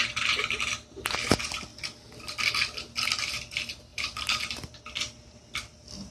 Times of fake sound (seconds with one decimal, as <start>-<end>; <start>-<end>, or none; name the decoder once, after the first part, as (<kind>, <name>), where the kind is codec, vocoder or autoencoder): 0.0-0.5 (vocoder, BigVGAN v2); 3.9-4.8